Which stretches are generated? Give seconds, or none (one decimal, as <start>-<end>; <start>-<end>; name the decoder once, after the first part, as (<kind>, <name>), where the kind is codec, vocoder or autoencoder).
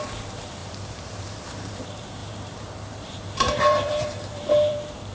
0.0-5.1 (vocoder, BigVGAN v2)